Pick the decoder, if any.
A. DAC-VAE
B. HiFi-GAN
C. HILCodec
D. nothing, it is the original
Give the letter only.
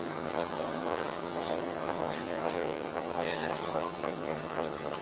B